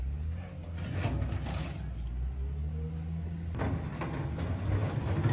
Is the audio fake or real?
real